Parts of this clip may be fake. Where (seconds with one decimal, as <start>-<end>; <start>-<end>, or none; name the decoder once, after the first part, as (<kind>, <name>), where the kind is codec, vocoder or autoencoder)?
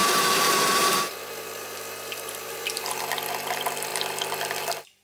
0.0-3.0 (vocoder, BigVGAN v2)